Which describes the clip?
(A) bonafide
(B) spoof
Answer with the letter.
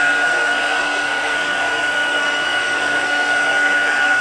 B